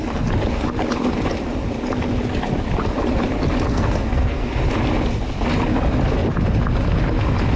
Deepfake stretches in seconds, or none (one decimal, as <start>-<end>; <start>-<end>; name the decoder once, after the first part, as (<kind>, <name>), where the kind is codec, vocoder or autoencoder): 3.7-4.5 (codec, SNAC)